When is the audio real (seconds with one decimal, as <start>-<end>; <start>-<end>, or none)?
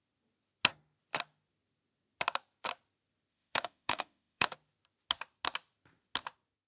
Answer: 0.0-3.3; 4.5-6.7